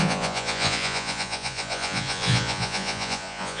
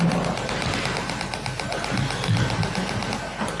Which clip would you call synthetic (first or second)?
first